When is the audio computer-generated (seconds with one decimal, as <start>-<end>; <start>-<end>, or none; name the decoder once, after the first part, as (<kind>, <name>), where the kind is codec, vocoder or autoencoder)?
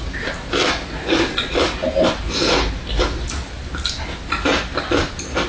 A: none